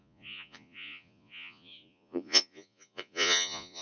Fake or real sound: fake